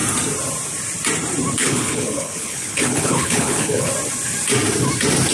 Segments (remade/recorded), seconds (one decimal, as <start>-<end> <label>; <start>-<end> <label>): 0.0-1.6 recorded; 1.6-3.9 remade; 3.9-5.3 recorded